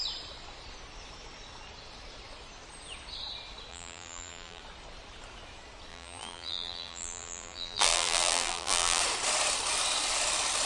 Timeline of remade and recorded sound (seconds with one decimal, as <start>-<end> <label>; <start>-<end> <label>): 0.0-3.7 recorded; 3.7-4.6 remade; 4.6-5.9 recorded; 5.9-9.0 remade; 9.0-10.7 recorded